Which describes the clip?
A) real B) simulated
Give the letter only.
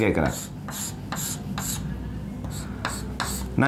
A